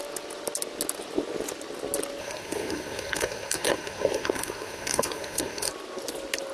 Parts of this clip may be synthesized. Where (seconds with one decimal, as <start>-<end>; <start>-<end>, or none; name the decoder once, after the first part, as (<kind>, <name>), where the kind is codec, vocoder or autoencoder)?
2.2-5.7 (codec, SNAC)